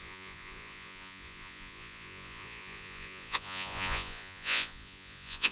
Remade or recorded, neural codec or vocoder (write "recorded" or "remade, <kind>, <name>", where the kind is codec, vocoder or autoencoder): remade, vocoder, Vocos